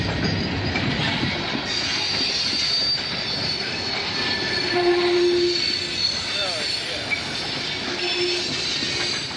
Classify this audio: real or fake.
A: real